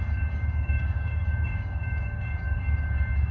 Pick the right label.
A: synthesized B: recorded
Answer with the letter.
A